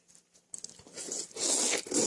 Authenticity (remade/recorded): recorded